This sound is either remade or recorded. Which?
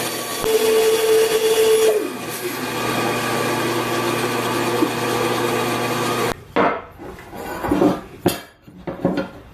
recorded